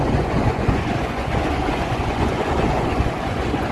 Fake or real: fake